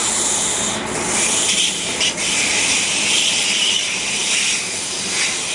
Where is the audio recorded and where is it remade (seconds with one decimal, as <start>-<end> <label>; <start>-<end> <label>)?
0.0-5.5 recorded